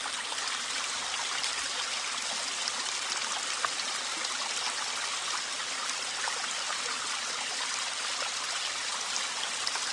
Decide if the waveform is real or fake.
real